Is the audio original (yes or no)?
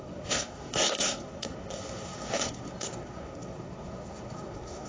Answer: no